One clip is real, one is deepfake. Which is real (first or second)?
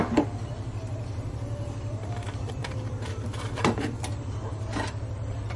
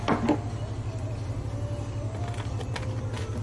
second